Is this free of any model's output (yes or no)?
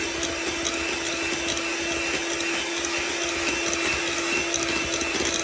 yes